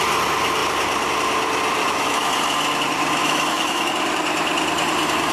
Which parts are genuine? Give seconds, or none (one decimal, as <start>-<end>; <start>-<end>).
0.0-1.8; 2.3-3.2; 3.9-5.3